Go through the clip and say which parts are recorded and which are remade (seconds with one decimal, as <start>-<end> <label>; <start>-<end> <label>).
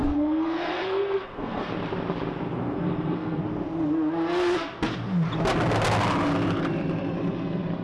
0.0-1.7 remade; 1.7-2.6 recorded; 2.6-3.4 remade; 3.4-7.8 recorded